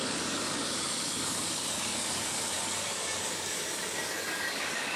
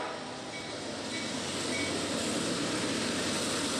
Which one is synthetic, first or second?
first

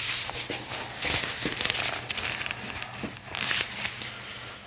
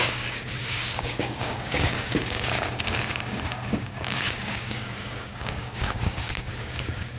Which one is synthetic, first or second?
second